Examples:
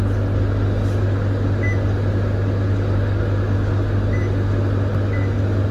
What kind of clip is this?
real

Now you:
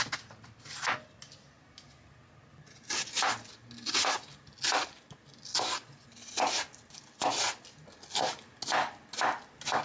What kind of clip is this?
real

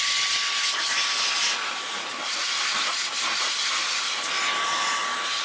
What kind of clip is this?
real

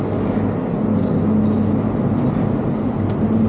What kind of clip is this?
real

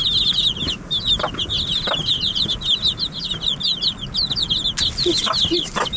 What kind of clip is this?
real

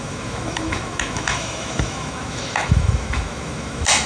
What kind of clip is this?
fake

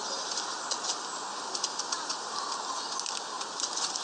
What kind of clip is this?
real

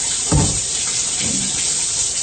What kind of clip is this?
fake